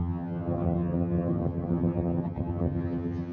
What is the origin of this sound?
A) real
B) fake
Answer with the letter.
B